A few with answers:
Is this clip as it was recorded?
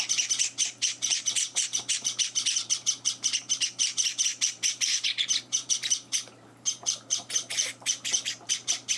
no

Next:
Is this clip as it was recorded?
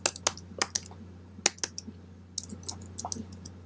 yes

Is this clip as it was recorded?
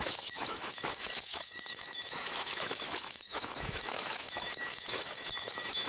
no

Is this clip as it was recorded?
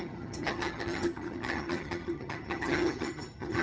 no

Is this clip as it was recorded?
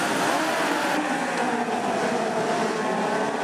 yes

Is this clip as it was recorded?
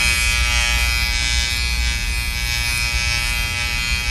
yes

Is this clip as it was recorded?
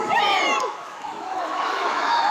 no